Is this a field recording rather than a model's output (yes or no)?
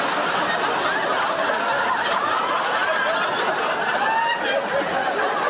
yes